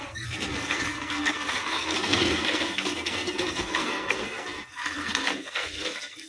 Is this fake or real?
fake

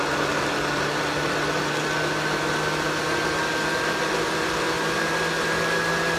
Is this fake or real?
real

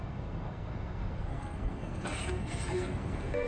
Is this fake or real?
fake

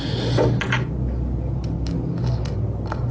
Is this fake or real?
real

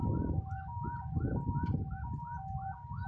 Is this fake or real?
real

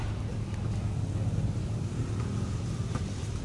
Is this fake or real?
real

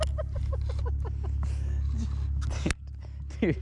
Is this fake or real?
real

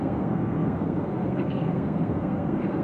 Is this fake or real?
fake